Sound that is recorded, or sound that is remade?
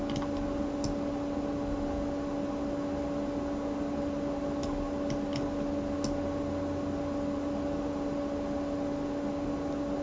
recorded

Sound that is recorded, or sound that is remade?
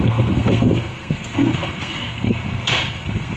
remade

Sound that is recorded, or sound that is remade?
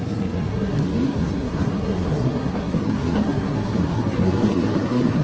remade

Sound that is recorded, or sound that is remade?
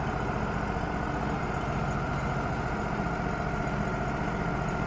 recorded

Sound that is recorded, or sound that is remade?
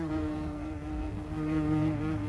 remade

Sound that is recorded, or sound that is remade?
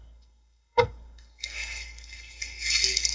remade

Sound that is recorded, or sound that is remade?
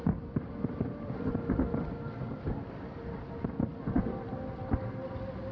recorded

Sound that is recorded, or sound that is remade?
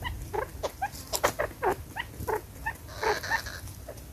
recorded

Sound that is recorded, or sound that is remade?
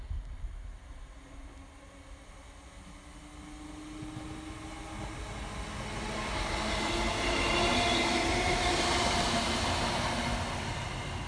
recorded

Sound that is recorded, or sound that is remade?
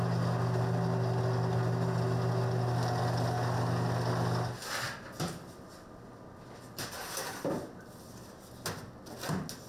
recorded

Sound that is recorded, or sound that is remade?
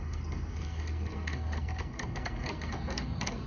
remade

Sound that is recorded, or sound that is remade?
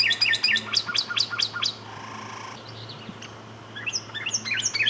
recorded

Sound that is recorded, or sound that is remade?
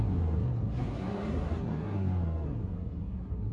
remade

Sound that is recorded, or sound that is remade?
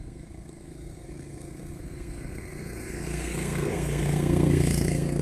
remade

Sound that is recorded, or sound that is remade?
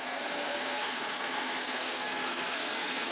remade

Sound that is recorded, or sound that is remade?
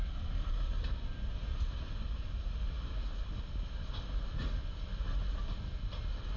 recorded